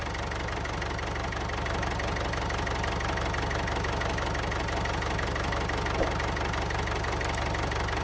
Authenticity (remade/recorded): recorded